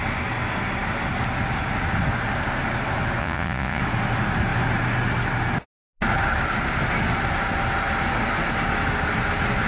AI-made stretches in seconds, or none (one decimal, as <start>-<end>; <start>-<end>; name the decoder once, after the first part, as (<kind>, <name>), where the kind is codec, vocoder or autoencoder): 3.2-3.8 (vocoder, Vocos)